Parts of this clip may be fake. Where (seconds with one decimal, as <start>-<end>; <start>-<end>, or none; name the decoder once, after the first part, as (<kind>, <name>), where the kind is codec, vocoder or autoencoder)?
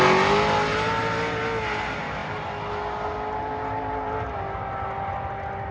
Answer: none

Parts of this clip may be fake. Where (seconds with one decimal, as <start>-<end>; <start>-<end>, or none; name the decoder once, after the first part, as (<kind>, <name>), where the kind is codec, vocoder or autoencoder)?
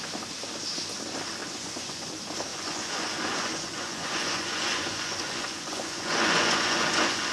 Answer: 1.4-2.1 (vocoder, Vocos); 2.5-7.3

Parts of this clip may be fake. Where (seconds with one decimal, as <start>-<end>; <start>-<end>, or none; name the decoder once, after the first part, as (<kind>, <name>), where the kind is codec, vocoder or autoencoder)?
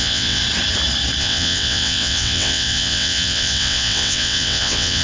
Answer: 0.0-0.4 (vocoder, WaveNeXt); 1.2-5.0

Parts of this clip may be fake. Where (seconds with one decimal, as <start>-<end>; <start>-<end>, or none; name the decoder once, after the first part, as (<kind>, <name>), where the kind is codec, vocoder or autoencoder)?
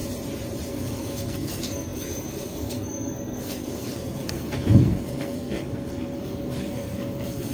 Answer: 0.7-7.5 (codec, SNAC)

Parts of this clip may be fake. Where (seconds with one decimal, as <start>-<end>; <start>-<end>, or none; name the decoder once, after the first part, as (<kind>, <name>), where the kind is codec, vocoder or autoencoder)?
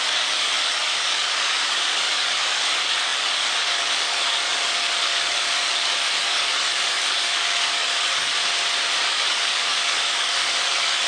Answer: 0.0-8.3 (codec, DAC); 9.0-11.1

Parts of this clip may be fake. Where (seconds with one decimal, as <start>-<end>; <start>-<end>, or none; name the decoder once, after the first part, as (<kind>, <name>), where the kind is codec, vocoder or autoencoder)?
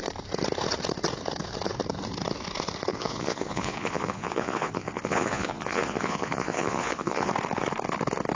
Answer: 2.9-7.3 (vocoder, Vocos)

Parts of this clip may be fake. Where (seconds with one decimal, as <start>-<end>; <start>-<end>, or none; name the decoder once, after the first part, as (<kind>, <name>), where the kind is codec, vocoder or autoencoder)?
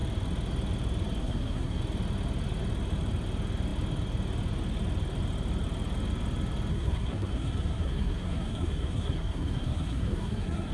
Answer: 1.2-1.8 (codec, SNAC); 6.7-10.7